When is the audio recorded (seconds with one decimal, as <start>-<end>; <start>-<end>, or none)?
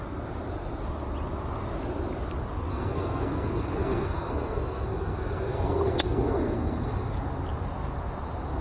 0.0-2.7; 7.1-8.6